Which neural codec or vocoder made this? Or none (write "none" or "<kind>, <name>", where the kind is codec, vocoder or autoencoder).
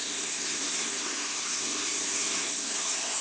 codec, SNAC